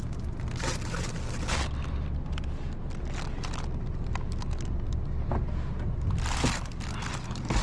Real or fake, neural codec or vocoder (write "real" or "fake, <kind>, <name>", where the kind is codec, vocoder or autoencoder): real